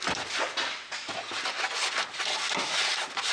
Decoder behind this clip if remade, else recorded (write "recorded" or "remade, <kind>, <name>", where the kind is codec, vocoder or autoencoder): recorded